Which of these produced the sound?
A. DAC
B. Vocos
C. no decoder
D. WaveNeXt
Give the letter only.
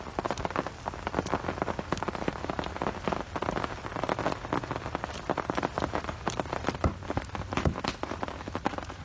C